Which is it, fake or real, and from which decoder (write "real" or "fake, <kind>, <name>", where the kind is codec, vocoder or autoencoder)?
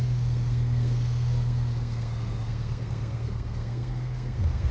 fake, codec, SNAC